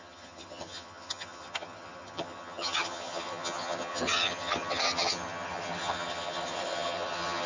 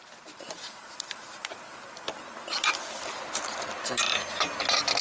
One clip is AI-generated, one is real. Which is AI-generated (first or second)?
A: first